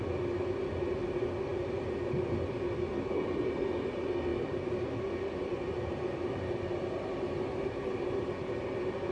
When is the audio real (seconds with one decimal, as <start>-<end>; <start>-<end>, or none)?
0.0-9.1